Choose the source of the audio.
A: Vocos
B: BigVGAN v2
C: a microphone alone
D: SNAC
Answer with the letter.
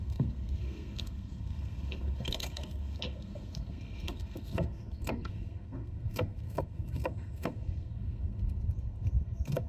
D